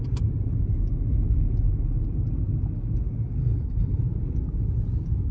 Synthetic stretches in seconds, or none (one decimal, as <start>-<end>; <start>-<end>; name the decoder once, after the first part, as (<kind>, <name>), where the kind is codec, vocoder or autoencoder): 3.4-4.0 (codec, HILCodec)